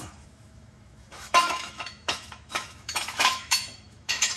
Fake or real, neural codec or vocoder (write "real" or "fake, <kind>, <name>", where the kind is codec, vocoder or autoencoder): fake, autoencoder, DAC-VAE